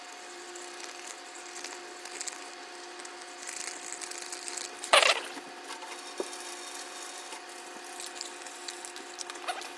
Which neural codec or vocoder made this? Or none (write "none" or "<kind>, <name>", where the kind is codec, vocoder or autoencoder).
none